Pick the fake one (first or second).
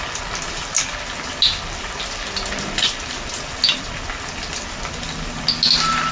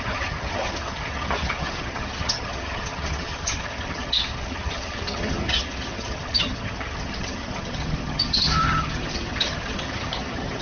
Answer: second